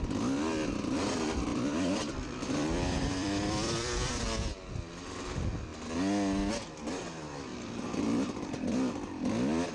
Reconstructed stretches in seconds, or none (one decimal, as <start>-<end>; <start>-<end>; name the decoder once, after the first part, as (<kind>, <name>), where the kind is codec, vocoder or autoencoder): 1.5-4.1 (vocoder, BigVGAN v2); 7.5-8.9